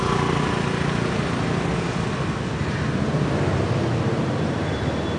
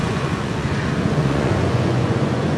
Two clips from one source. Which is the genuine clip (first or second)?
first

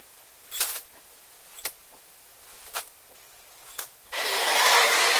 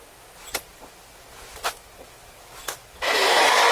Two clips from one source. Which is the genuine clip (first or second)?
second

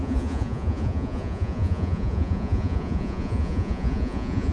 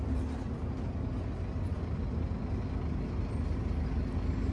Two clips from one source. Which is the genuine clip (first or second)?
second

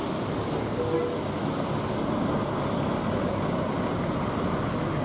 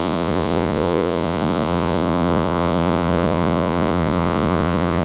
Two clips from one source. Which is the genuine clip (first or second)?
first